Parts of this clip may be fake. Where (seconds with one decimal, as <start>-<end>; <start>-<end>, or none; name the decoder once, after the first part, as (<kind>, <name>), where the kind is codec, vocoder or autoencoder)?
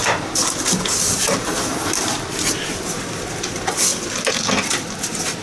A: 0.0-3.2 (vocoder, BigVGAN v2)